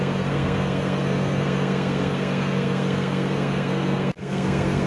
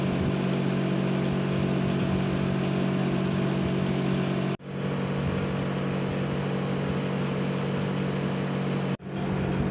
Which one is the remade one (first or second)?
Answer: first